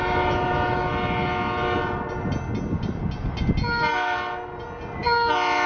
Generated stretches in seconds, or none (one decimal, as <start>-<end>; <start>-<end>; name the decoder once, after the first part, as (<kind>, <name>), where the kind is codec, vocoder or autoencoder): none